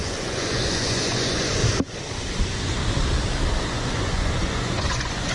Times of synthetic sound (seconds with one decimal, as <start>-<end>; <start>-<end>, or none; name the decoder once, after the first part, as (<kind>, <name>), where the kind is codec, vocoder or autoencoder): 0.0-1.6 (vocoder, Vocos); 2.4-2.8; 3.6-5.3